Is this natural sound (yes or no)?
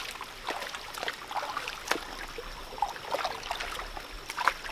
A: yes